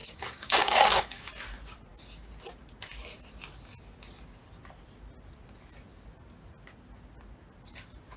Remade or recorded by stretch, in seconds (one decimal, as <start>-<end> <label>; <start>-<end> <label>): 0.0-1.3 remade; 1.3-8.2 recorded